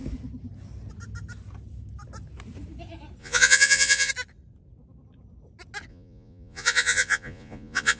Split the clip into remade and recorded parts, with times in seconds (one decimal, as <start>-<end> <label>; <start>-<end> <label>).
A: 0.0-3.2 recorded; 3.2-4.1 remade; 4.1-5.9 recorded; 5.9-8.0 remade